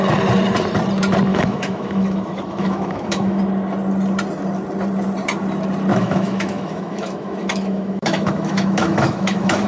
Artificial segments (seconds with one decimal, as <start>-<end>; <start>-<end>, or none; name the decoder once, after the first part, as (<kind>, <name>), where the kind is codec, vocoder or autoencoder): 1.3-3.4 (autoencoder, DAC-VAE); 5.9-9.7